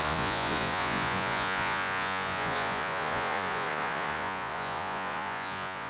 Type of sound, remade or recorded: remade